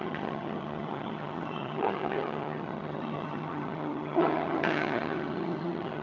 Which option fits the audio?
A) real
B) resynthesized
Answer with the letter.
B